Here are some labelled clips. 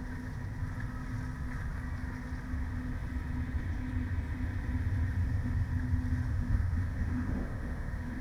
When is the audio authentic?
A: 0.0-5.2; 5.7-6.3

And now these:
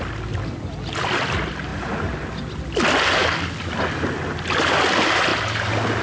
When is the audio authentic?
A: 0.0-6.0

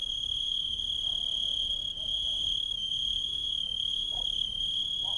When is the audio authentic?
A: 0.8-2.4; 4.6-5.2

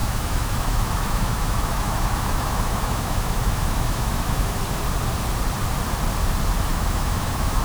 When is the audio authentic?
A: 4.6-6.7